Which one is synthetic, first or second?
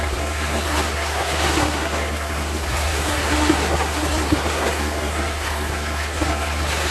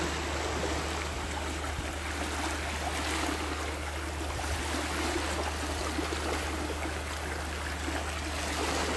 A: first